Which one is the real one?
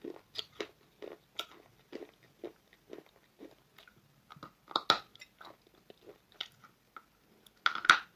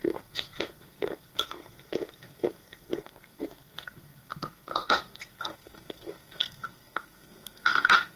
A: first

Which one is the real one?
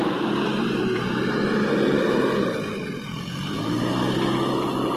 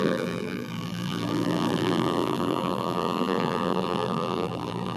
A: first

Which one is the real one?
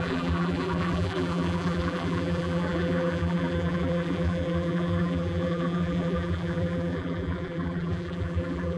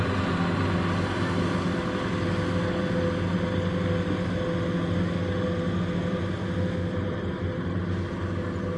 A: second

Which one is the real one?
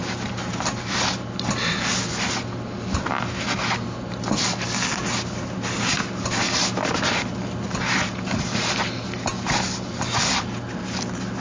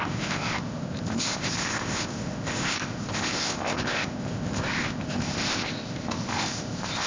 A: first